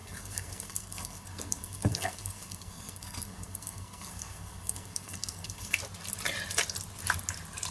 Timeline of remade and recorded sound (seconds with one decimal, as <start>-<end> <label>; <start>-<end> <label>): 0.0-5.8 remade; 5.8-7.7 recorded

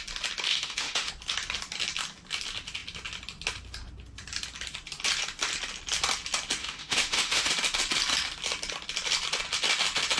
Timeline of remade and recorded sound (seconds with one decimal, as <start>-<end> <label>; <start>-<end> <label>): 0.0-0.5 recorded; 0.5-1.1 remade; 1.1-6.6 recorded; 6.6-7.5 remade; 7.5-10.2 recorded

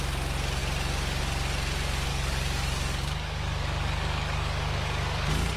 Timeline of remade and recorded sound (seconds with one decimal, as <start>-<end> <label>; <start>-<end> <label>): 0.0-2.1 recorded; 2.1-5.6 remade

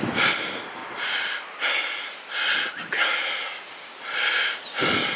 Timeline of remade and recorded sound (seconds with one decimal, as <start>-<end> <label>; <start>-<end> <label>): 0.0-5.2 recorded

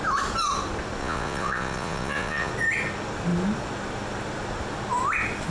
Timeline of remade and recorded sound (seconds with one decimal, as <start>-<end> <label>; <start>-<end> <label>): 0.0-1.0 recorded; 1.0-2.5 remade; 2.5-5.5 recorded